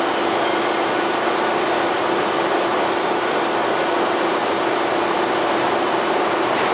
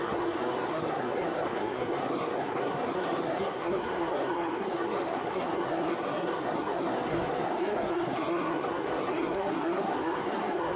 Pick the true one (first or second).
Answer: first